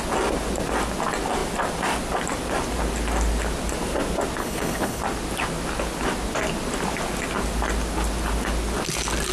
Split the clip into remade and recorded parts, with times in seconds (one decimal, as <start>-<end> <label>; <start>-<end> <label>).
0.0-4.4 recorded; 4.4-5.0 remade; 5.0-9.3 recorded